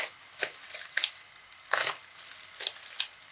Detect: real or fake real